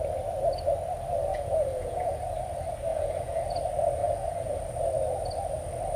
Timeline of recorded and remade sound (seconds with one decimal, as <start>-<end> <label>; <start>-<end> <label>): 0.0-1.3 recorded; 1.3-2.2 remade; 2.2-2.9 recorded; 2.9-3.4 remade; 3.4-4.0 recorded; 4.0-4.6 remade; 4.6-6.0 recorded